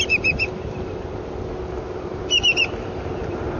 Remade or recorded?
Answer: recorded